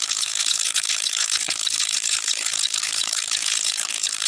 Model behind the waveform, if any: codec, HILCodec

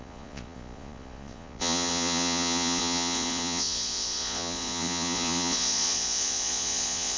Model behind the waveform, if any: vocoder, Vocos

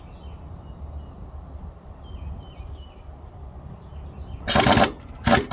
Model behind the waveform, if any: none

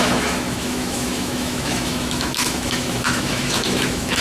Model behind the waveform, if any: autoencoder, DAC-VAE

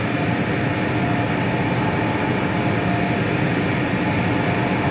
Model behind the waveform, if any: none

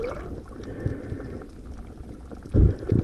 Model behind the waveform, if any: none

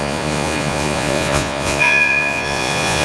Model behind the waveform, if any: vocoder, Vocos